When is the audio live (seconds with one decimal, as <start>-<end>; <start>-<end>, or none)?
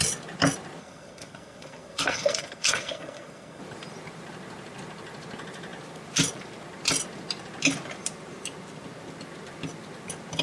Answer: 0.0-0.8; 3.6-10.4